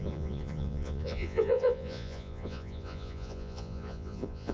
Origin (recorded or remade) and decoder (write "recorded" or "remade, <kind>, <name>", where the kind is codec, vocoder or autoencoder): remade, vocoder, Vocos